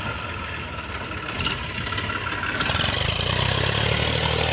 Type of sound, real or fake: real